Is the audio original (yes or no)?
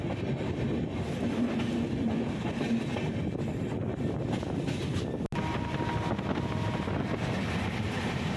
yes